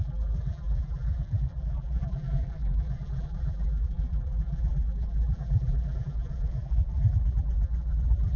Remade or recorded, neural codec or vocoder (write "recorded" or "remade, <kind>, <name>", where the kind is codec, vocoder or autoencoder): remade, vocoder, BigVGAN v2